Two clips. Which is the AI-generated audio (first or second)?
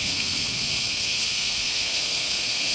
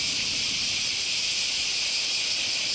first